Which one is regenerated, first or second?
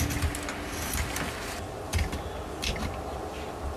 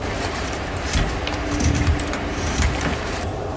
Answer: second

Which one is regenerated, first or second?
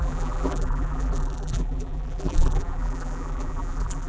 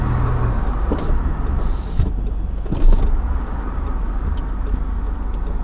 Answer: first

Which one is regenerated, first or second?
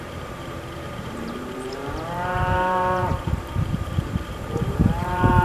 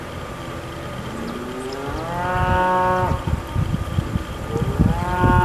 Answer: first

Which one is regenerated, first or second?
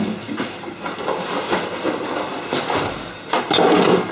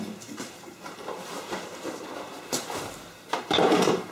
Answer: second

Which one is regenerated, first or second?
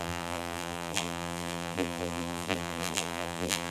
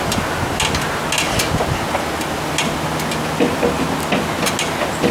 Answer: first